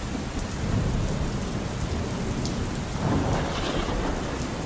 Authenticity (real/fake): real